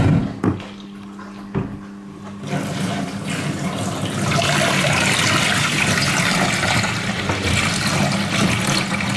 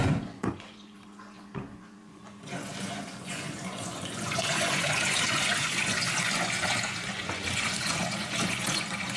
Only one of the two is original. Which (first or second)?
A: first